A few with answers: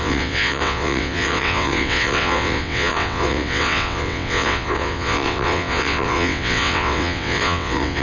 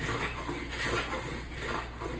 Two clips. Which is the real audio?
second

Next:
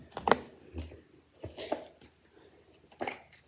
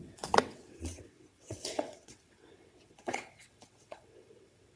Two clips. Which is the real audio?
first